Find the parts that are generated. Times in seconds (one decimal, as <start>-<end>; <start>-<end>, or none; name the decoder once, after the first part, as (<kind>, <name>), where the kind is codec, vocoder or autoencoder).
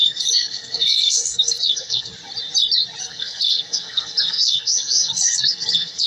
0.0-2.1 (codec, SNAC); 3.0-6.1